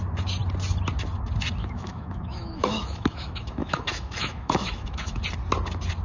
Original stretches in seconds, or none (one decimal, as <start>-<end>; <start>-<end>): 0.0-1.6; 5.2-6.0